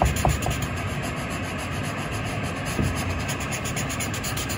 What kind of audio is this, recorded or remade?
recorded